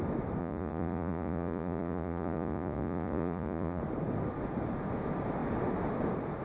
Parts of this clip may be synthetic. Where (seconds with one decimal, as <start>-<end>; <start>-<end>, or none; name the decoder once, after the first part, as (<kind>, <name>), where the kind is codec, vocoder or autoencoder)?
0.4-3.8 (vocoder, Vocos)